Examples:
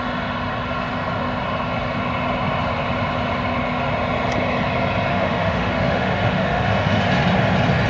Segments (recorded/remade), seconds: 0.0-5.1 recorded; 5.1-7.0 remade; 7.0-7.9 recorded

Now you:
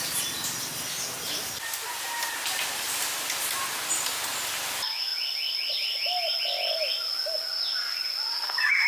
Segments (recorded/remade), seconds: 0.0-8.9 recorded

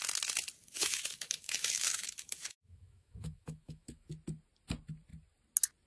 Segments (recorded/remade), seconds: 0.0-0.6 recorded; 0.6-4.1 remade; 4.1-5.9 recorded

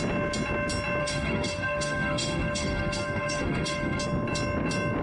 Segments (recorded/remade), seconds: 0.0-1.0 recorded; 1.0-4.0 remade; 4.0-5.0 recorded

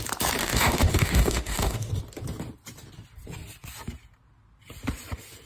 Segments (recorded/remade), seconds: 0.0-0.4 recorded; 0.4-1.9 remade; 1.9-5.5 recorded

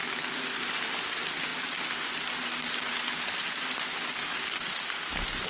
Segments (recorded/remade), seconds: 0.0-5.5 recorded